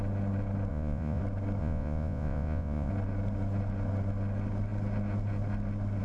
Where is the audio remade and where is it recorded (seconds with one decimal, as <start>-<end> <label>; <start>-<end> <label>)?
0.0-0.7 recorded; 0.7-1.2 remade; 1.2-1.6 recorded; 1.6-2.9 remade; 2.9-6.0 recorded